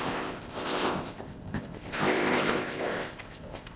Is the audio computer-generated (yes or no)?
yes